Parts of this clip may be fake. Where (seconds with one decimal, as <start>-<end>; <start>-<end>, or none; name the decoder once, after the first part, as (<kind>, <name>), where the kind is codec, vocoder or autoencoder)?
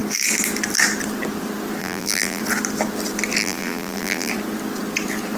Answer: 1.8-2.4 (vocoder, BigVGAN v2); 3.4-4.3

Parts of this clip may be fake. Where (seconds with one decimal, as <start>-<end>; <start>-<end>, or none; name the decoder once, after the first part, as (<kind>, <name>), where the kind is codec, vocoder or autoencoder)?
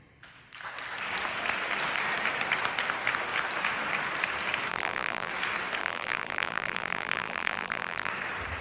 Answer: 4.7-5.3 (vocoder, BigVGAN v2); 5.8-8.1